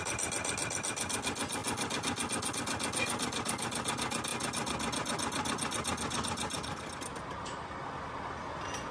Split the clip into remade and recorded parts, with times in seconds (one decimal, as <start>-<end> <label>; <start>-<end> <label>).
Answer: 0.0-8.9 recorded